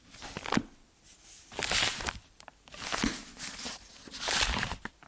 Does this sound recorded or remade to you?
recorded